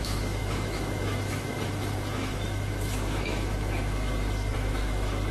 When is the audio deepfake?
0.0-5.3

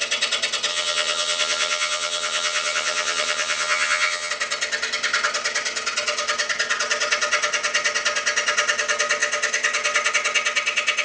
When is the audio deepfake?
0.7-4.3

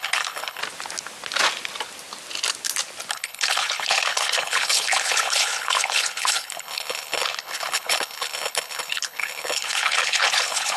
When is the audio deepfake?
0.0-0.6; 3.1-10.8

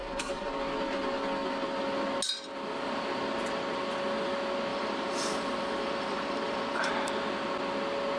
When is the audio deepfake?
0.0-0.5; 4.7-6.9

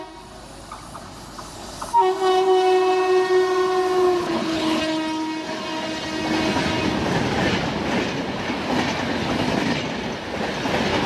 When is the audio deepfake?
4.2-4.8